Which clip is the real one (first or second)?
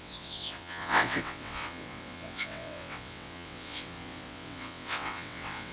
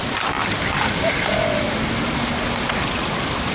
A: second